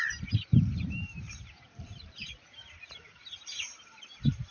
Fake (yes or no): yes